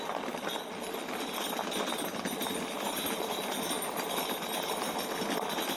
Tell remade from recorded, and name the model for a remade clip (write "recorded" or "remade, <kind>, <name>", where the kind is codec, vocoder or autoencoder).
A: recorded